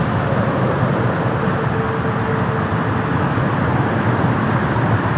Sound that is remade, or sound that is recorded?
recorded